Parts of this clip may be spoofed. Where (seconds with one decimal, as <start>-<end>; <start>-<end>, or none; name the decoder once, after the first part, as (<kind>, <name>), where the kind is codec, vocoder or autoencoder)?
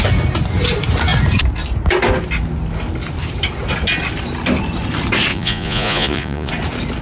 5.3-6.5 (vocoder, Vocos)